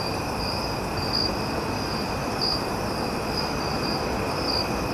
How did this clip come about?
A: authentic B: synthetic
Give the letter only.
A